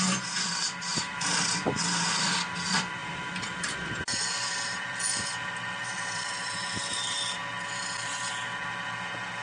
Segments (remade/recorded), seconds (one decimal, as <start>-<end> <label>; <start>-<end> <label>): 0.0-0.9 recorded; 0.9-2.2 remade; 2.2-3.0 recorded; 3.0-6.3 remade; 6.3-9.4 recorded